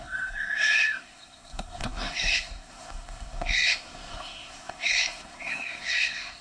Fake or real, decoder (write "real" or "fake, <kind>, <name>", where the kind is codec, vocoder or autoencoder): fake, codec, SNAC